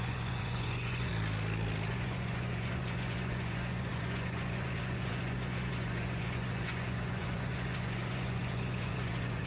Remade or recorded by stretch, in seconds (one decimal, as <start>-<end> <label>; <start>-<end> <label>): 0.0-1.1 remade; 1.1-1.9 recorded; 1.9-9.5 remade